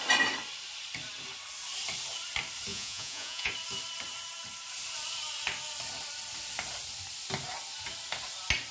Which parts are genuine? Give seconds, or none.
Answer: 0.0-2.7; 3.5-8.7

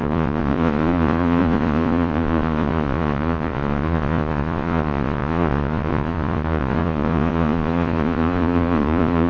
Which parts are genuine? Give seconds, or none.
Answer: none